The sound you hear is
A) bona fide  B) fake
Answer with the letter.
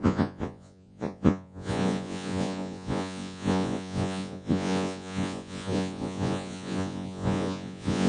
B